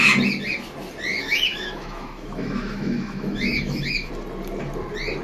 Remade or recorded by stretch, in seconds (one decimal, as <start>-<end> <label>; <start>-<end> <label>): 0.0-1.1 recorded; 1.1-4.1 remade; 4.1-5.2 recorded